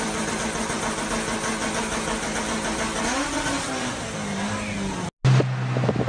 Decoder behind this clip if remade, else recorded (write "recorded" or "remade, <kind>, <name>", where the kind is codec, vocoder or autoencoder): recorded